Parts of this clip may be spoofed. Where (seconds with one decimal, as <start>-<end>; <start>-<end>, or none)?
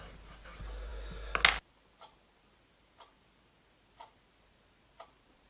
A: none